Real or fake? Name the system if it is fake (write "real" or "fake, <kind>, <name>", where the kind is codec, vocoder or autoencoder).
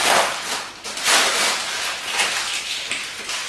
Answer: real